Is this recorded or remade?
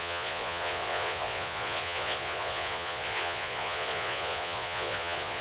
remade